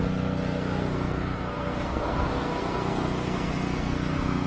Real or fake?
fake